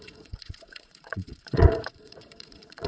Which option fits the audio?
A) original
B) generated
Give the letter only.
B